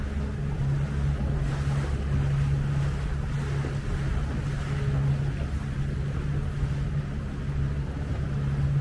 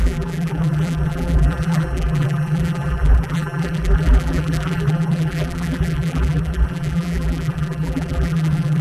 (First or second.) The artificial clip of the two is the second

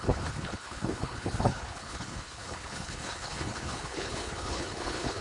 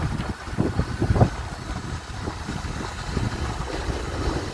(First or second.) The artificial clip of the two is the first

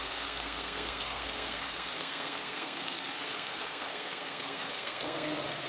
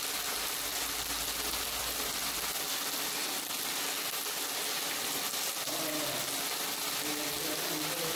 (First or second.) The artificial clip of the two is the first